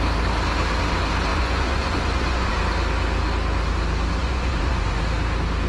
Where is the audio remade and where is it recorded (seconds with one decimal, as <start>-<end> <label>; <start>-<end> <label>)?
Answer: 0.0-1.3 recorded; 1.3-2.5 remade; 2.5-4.2 recorded; 4.2-5.0 remade; 5.0-5.7 recorded